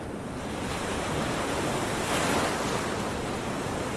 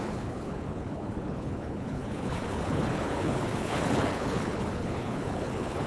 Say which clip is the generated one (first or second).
second